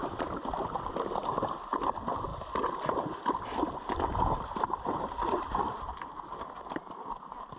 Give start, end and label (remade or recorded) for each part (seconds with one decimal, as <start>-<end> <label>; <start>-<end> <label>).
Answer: 0.0-7.6 recorded